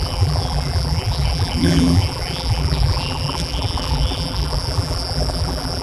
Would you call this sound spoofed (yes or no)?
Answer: yes